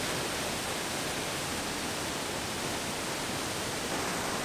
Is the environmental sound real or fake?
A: real